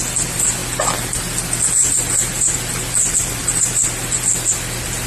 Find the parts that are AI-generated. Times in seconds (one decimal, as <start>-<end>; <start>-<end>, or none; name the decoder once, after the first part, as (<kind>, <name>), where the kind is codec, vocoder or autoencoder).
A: none

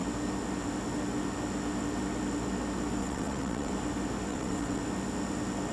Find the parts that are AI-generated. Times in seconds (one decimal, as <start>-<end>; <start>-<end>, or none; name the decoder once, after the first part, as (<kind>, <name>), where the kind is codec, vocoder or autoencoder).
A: 3.0-3.7 (vocoder, WaveNeXt); 4.3-4.8

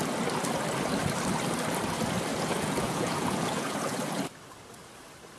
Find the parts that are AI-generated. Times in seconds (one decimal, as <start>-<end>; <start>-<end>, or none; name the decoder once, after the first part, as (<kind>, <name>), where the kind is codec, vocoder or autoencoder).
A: 2.3-4.2 (vocoder, Vocos)

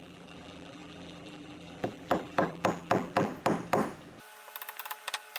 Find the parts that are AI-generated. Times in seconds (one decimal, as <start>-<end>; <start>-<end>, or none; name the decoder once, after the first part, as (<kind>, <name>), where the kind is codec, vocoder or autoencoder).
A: 0.0-3.3 (vocoder, BigVGAN v2)